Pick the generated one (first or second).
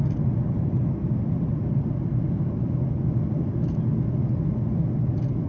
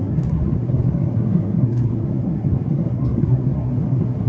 second